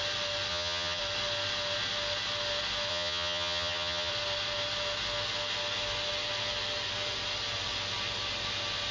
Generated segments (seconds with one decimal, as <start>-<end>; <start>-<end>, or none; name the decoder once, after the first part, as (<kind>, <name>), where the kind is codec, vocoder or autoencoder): 0.5-1.0 (vocoder, HiFi-GAN); 2.9-4.1